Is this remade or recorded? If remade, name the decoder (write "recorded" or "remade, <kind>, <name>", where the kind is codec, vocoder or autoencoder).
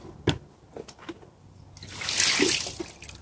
recorded